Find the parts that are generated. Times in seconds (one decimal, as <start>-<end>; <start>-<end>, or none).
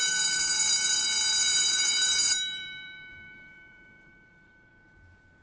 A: 1.5-4.7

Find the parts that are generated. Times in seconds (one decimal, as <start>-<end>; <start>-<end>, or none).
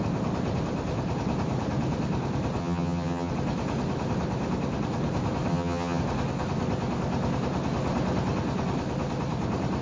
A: 2.6-3.3; 5.5-6.0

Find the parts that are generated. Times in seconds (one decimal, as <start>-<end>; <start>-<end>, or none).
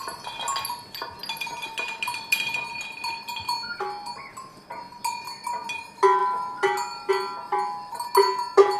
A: none